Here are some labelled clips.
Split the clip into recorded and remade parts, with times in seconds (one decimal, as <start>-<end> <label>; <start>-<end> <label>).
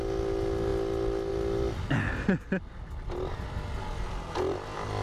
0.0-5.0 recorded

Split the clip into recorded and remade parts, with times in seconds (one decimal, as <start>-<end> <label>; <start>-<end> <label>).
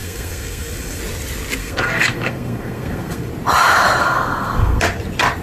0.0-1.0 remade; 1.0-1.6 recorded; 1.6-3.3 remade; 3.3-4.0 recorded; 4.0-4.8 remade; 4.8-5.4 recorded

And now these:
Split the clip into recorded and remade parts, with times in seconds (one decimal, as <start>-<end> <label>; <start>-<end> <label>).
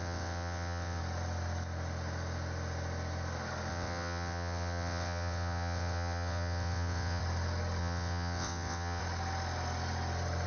0.0-1.0 remade; 1.0-3.7 recorded; 3.7-7.2 remade; 7.2-7.8 recorded; 7.8-9.0 remade; 9.0-10.5 recorded